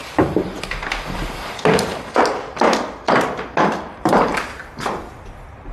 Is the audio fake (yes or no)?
yes